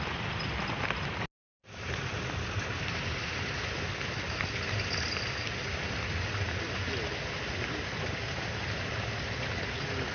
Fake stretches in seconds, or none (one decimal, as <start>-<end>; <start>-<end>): none

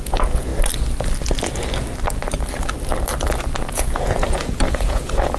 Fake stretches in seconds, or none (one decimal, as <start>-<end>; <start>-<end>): 0.0-0.5; 3.7-5.4

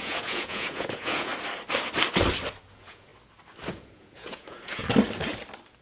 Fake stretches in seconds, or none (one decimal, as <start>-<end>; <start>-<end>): 0.0-1.3; 2.7-3.1; 3.7-4.8

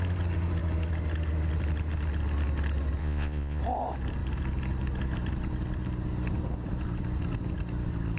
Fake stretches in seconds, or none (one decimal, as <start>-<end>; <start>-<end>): 3.0-3.6

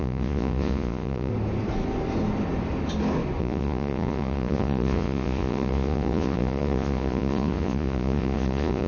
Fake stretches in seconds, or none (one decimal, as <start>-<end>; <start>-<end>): 0.0-1.3; 3.4-8.9

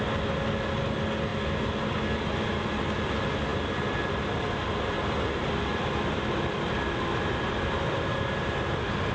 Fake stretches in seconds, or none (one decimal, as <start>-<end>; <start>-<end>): none

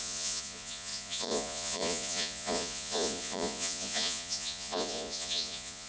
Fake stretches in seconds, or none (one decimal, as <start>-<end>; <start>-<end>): 0.0-5.9

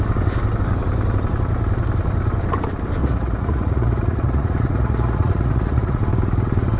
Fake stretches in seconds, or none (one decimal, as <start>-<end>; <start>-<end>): 3.0-6.0